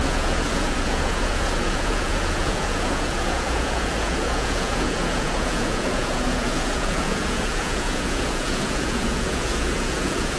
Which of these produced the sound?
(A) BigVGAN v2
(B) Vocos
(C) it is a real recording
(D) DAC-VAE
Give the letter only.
B